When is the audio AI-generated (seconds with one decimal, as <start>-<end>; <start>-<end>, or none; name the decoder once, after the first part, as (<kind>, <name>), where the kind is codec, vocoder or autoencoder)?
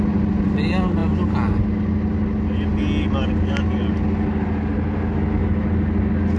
none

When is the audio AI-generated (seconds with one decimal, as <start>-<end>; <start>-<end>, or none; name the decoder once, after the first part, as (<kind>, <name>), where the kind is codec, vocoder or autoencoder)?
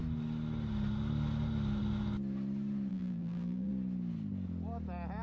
2.9-3.7 (vocoder, BigVGAN v2)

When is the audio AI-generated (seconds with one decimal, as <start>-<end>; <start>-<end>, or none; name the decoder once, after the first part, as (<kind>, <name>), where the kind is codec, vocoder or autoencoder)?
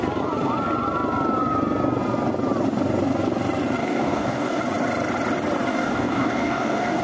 3.8-4.6 (codec, DAC); 5.7-7.0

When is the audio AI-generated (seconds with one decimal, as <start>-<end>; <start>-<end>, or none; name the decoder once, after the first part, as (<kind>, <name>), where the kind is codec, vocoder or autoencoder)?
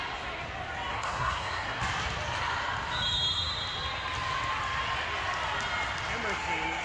0.9-1.8 (codec, SNAC)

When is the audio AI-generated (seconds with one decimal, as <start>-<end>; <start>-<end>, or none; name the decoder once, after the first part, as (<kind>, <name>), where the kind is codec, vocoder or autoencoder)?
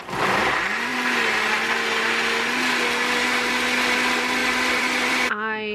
4.4-5.1 (vocoder, BigVGAN v2)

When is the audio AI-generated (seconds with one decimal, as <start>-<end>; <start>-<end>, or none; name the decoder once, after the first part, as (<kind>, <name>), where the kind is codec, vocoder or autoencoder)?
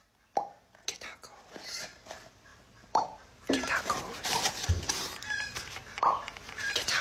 2.5-7.0 (vocoder, BigVGAN v2)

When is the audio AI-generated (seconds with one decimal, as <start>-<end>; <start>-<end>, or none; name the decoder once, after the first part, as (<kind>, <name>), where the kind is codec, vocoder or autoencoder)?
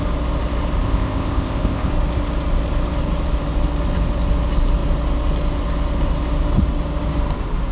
0.8-1.9 (codec, ZipCodec)